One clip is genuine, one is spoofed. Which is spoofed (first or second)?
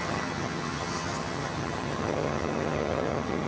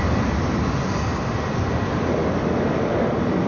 first